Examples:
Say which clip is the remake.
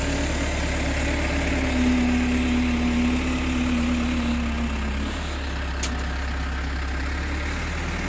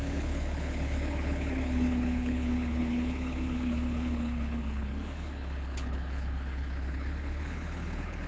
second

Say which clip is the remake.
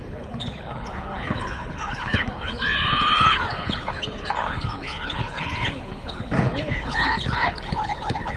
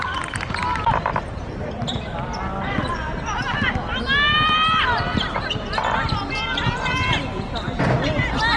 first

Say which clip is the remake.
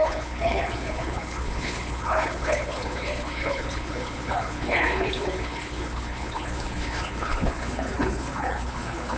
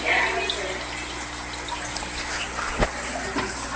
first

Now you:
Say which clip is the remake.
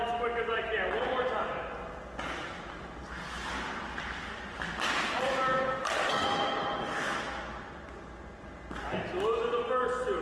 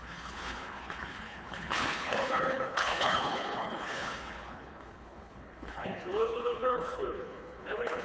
second